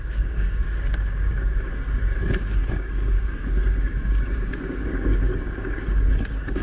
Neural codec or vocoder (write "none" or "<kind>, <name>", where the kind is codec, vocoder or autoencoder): codec, DAC